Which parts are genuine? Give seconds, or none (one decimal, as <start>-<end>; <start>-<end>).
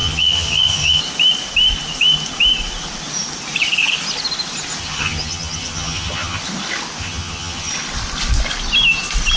1.0-4.8; 6.4-7.0; 7.7-9.4